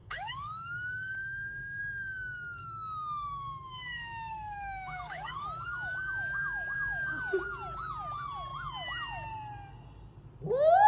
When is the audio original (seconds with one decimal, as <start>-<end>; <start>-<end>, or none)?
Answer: 1.8-2.6; 7.2-10.9